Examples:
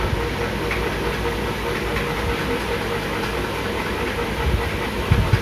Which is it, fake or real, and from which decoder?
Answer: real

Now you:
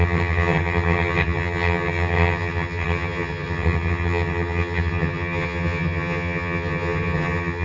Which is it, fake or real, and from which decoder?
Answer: fake, vocoder, HiFi-GAN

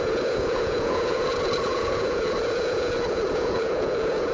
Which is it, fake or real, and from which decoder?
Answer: fake, vocoder, Vocos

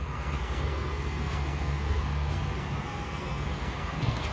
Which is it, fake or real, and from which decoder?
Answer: fake, codec, SNAC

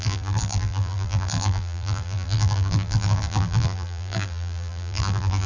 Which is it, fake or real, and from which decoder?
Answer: fake, vocoder, BigVGAN v2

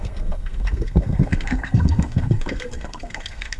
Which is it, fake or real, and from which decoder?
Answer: fake, codec, SNAC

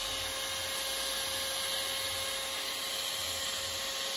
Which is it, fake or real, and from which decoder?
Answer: real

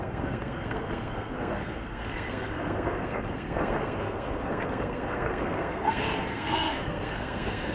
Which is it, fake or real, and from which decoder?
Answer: fake, codec, SNAC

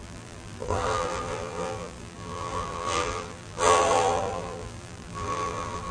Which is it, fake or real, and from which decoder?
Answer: fake, vocoder, BigVGAN v2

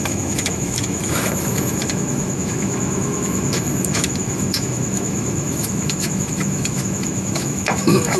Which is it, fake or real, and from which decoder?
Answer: fake, autoencoder, DAC-VAE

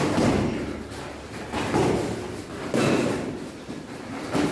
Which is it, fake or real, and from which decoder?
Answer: real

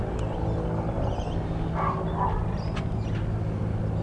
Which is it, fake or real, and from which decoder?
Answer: real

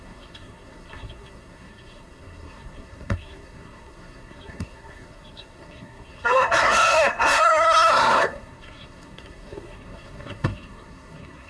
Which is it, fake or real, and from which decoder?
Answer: fake, codec, SNAC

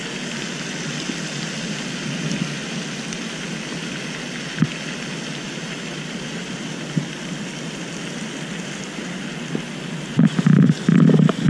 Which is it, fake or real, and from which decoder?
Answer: real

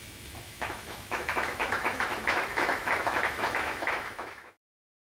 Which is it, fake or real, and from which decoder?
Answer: fake, autoencoder, DAC-VAE